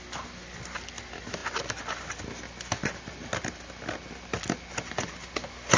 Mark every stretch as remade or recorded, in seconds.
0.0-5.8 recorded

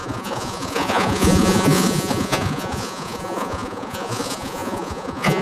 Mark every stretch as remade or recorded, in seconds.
0.0-5.4 remade

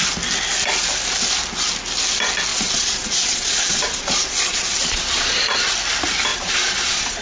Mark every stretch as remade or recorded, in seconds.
0.0-2.5 recorded; 2.5-5.7 remade; 5.7-6.3 recorded; 6.3-7.2 remade

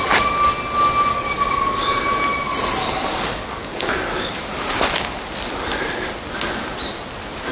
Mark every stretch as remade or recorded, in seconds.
0.0-1.1 recorded; 1.1-2.0 remade; 2.0-3.1 recorded; 3.1-4.3 remade; 4.3-7.5 recorded

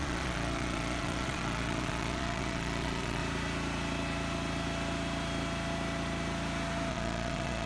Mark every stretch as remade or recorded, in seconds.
0.0-3.2 remade; 3.2-6.9 recorded; 6.9-7.7 remade

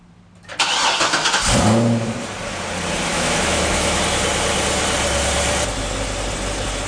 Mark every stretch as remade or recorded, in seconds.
0.0-3.1 recorded; 3.1-4.0 remade; 4.0-6.9 recorded

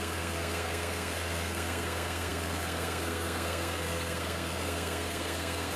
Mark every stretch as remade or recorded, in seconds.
0.0-5.8 remade

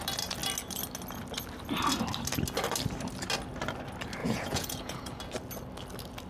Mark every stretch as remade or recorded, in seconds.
0.0-4.2 recorded; 4.2-5.2 remade; 5.2-6.3 recorded